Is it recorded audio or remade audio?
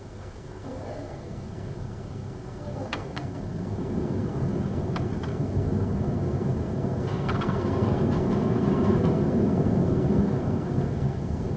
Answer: remade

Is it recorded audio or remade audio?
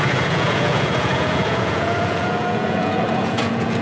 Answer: remade